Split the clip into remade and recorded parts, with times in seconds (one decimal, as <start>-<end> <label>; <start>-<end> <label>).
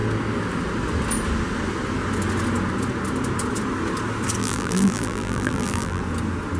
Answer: 0.0-4.4 recorded; 4.4-6.0 remade; 6.0-6.6 recorded